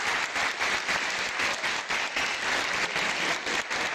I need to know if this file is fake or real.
real